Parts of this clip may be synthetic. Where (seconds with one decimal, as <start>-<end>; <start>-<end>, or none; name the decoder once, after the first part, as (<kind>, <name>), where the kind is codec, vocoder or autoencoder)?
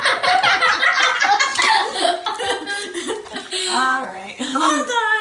3.6-4.7 (codec, SNAC)